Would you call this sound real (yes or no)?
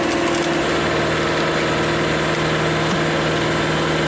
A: yes